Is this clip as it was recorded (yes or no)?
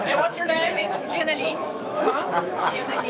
no